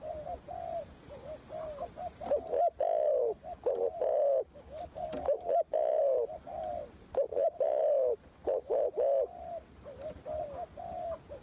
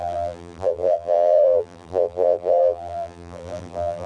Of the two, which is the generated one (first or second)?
second